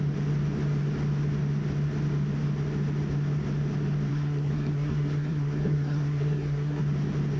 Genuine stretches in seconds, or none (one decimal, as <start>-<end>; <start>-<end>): 0.0-4.1; 6.8-7.4